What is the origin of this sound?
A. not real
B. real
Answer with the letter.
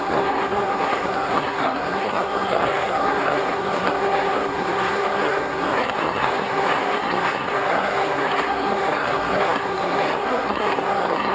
A